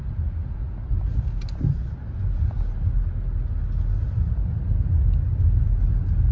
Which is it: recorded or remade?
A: recorded